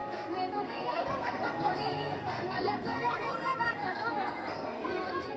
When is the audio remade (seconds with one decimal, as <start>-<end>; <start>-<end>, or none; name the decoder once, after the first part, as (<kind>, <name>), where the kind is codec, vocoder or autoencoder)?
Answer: 0.0-5.4 (codec, SNAC)